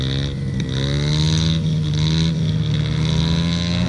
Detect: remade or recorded recorded